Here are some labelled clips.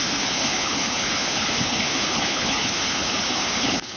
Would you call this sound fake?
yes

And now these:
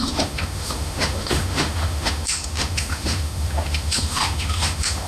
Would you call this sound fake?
yes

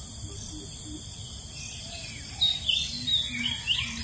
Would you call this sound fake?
no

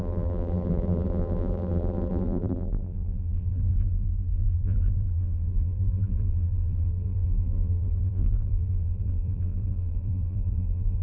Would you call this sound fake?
yes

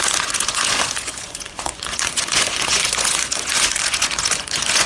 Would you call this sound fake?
yes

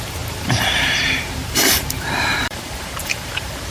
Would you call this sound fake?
yes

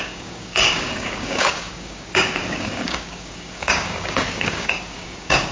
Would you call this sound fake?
yes